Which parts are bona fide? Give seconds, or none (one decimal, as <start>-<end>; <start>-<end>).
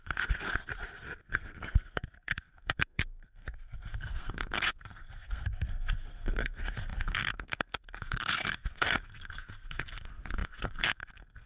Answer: 0.7-1.2